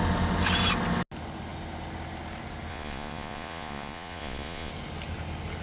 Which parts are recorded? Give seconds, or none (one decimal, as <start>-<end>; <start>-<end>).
0.0-2.7; 4.7-5.6

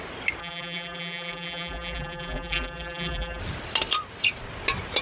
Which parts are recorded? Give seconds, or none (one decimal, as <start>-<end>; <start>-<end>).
0.0-0.4; 3.4-5.0